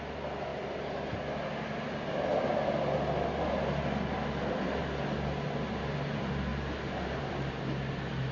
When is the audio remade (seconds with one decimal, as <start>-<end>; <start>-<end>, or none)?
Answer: none

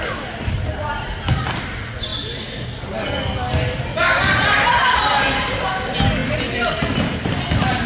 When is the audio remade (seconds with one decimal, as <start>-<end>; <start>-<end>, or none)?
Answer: none

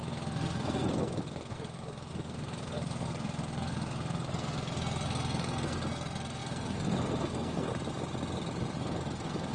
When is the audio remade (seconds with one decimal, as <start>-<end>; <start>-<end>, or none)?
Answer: 0.0-7.7; 8.8-9.5